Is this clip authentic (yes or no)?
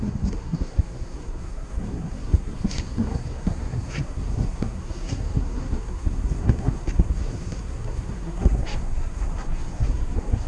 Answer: no